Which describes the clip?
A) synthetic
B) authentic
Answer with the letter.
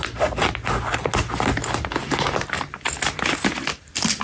B